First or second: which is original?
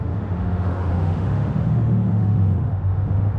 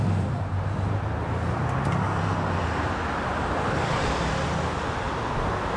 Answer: second